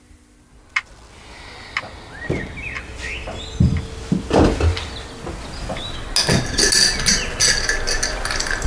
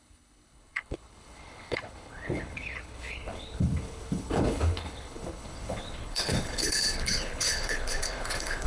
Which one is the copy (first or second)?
second